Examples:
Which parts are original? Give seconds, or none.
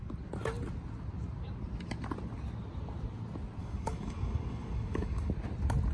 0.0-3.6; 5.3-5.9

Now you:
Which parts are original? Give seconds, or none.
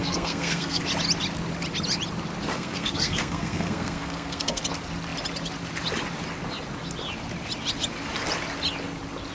0.8-2.5; 4.6-9.3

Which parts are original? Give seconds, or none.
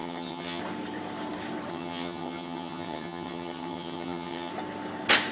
0.6-1.7; 4.5-5.3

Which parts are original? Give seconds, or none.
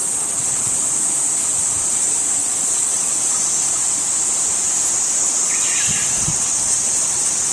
0.7-2.4; 3.3-6.3